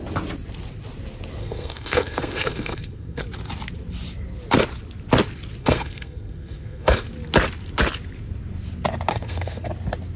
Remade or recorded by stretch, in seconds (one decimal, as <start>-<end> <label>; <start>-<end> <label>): 0.0-1.4 recorded; 1.4-3.2 remade; 3.2-5.6 recorded; 5.6-7.1 remade; 7.1-9.1 recorded; 9.1-9.7 remade; 9.7-10.2 recorded